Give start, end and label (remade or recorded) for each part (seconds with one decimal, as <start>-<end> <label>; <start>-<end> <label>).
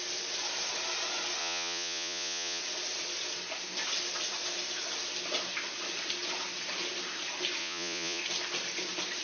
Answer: 0.0-1.4 recorded; 1.4-2.6 remade; 2.6-7.6 recorded; 7.6-8.2 remade; 8.2-9.2 recorded